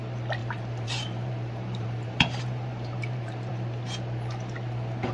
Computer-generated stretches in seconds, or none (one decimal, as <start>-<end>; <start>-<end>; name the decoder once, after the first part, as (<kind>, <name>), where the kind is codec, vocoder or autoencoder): 0.4-3.5 (vocoder, BigVGAN v2)

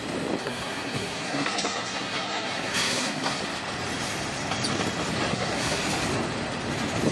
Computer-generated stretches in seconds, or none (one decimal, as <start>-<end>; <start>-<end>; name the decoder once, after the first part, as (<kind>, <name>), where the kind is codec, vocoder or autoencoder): 0.4-3.4 (codec, SNAC); 5.3-5.8

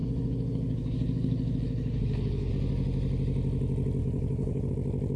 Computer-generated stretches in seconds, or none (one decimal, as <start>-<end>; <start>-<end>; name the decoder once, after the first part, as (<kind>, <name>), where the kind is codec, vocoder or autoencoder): 0.0-2.5 (codec, HILCodec); 4.0-4.7

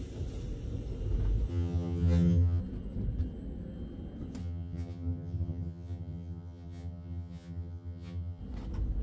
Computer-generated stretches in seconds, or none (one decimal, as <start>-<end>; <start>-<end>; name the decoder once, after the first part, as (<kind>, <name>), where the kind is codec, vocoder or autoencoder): 1.5-2.6 (vocoder, HiFi-GAN); 4.4-8.4

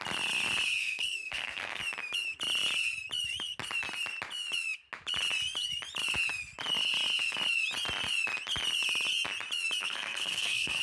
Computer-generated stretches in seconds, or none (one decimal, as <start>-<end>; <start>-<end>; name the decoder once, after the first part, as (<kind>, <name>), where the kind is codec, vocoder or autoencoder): 0.8-1.8 (codec, SNAC); 9.8-10.8

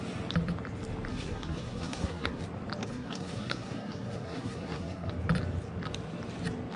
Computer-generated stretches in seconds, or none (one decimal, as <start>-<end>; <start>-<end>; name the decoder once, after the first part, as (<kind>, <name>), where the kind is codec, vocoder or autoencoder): 1.1-2.4 (codec, SNAC); 2.8-5.1

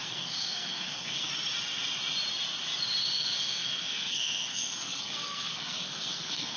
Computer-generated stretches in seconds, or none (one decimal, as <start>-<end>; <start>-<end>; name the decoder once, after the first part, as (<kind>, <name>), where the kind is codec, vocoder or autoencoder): 0.0-1.3 (codec, SNAC); 3.1-6.6

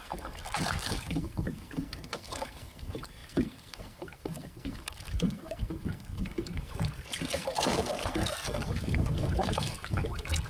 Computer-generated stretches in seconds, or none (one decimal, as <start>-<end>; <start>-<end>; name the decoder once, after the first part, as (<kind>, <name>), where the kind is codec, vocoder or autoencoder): 0.0-10.5 (codec, SNAC)